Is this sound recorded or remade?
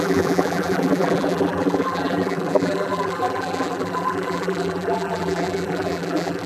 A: remade